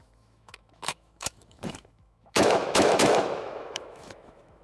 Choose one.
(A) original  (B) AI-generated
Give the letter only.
B